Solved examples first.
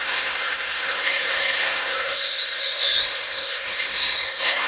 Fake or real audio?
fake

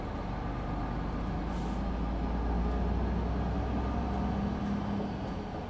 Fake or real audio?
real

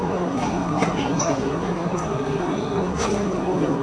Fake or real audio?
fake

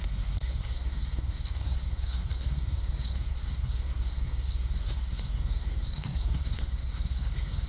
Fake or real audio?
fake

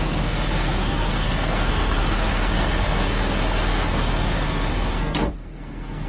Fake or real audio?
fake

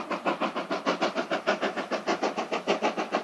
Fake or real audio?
real